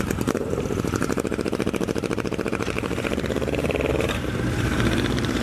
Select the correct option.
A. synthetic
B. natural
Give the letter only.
A